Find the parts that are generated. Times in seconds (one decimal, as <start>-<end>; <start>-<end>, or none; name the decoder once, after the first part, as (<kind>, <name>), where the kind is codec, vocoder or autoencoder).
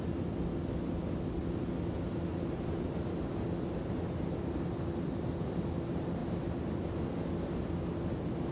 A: none